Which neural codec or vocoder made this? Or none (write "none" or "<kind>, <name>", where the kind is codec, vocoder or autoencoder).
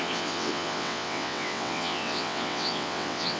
vocoder, WaveNeXt